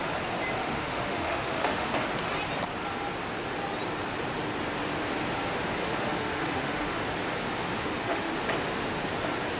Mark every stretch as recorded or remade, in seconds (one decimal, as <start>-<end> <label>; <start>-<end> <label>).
0.0-0.6 recorded; 0.6-1.9 remade; 1.9-5.8 recorded; 5.8-7.0 remade; 7.0-7.8 recorded; 7.8-8.3 remade; 8.3-9.6 recorded